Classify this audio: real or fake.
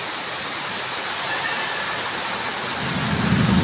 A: real